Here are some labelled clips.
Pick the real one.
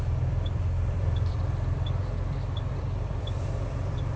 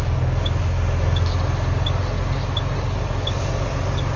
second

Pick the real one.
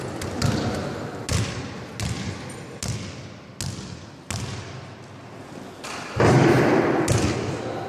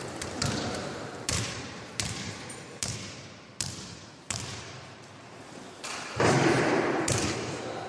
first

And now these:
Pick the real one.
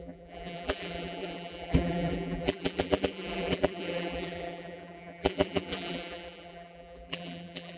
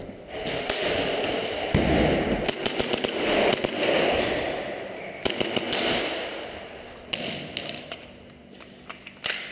second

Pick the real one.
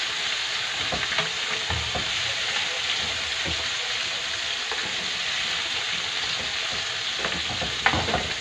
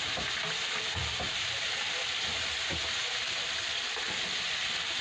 first